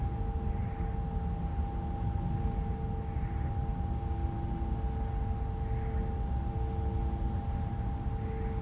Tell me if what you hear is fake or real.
real